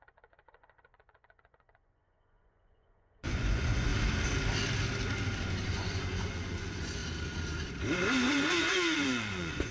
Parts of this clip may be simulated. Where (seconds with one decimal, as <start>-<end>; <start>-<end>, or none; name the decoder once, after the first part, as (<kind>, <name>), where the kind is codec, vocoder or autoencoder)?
0.0-3.9 (vocoder, Vocos); 5.7-7.0; 8.3-9.7